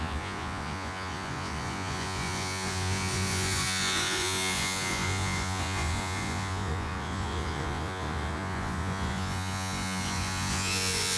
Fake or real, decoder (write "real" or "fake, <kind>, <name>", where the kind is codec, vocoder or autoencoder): fake, vocoder, Vocos